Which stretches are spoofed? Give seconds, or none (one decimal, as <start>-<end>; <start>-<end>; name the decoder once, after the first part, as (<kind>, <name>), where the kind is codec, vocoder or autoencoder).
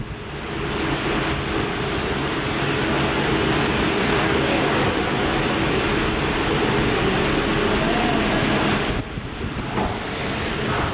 3.9-4.6 (codec, DAC)